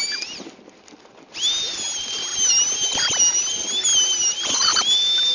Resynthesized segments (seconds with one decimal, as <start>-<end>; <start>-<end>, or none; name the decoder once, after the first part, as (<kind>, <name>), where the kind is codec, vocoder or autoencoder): none

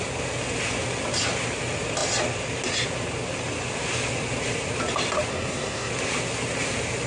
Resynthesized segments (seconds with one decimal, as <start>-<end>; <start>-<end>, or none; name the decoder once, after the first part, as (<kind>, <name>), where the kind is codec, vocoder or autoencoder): 5.3-5.9 (codec, SNAC)

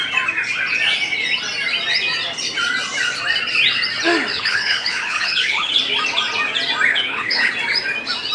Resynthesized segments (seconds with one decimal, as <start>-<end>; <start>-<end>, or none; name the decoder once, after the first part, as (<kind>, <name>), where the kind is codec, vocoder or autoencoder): 4.3-5.7 (codec, HILCodec); 6.9-7.5

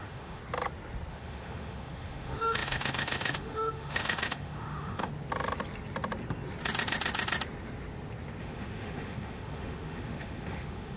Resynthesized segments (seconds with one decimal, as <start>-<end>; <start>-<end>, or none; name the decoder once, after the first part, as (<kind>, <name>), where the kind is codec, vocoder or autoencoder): 0.0-0.4 (autoencoder, DAC-VAE); 1.1-5.1; 8.4-11.0

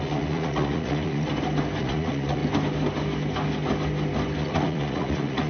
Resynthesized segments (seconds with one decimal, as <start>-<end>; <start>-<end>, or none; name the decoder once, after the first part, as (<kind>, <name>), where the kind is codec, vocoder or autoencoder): 0.0-1.3 (vocoder, Vocos); 1.8-2.4; 4.4-5.5

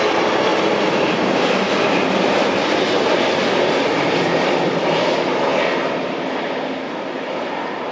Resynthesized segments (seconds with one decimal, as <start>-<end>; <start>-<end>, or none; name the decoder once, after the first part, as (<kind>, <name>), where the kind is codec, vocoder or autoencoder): 0.5-3.8 (vocoder, BigVGAN v2); 5.5-6.5